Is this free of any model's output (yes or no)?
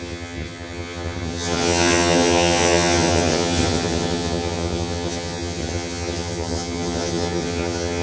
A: no